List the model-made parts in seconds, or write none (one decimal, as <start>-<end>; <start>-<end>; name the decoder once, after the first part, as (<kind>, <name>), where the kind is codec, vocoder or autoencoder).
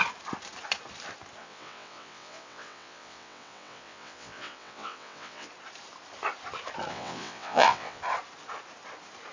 1.4-5.5 (vocoder, WaveNeXt); 6.9-8.0